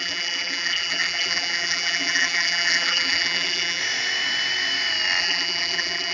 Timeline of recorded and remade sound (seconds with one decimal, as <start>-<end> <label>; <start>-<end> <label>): 0.0-3.8 remade; 3.8-5.2 recorded; 5.2-6.1 remade